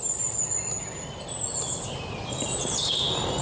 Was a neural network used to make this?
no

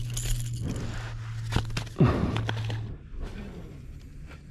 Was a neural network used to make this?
no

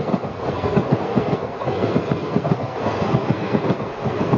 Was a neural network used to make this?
yes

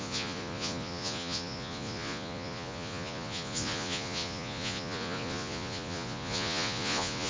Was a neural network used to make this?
yes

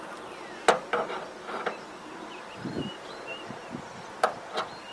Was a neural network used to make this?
no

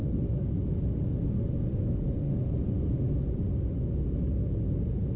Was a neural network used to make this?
no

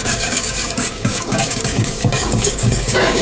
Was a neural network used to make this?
yes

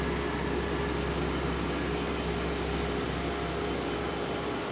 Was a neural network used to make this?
no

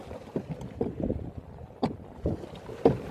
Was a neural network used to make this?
no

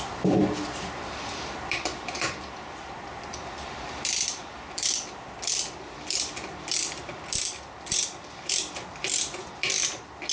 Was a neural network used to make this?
yes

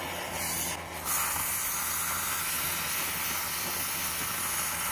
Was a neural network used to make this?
no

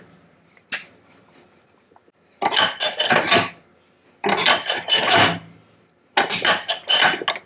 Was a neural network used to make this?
no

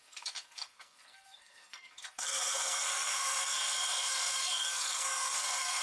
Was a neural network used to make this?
yes